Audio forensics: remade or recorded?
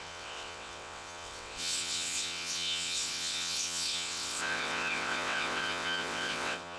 remade